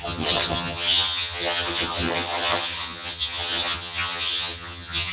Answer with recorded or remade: remade